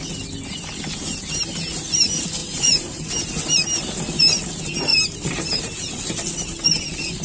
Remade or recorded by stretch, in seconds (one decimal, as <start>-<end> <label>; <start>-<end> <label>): 0.0-2.4 recorded; 2.4-3.2 remade; 3.2-4.9 recorded; 4.9-6.0 remade; 6.0-7.2 recorded